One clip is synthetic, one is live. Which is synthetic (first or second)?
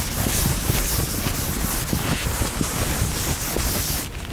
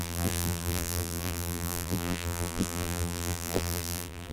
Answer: second